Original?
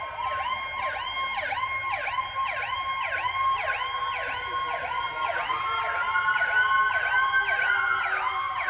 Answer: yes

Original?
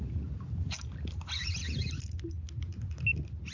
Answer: yes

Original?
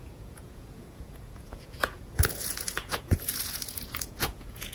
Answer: no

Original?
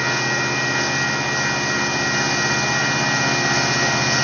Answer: yes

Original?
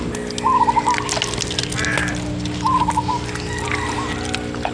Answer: yes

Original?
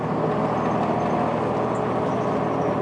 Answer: yes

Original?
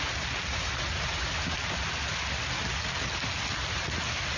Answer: yes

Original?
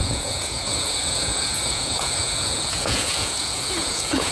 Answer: no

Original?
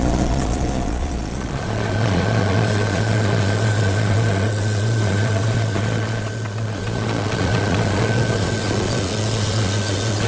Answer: no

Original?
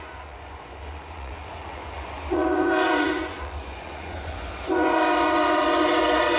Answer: no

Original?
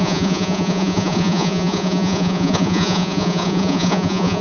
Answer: no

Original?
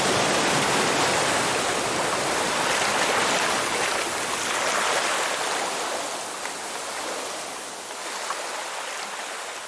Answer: yes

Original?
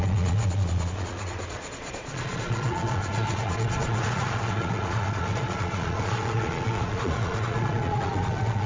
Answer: no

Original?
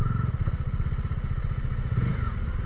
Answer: yes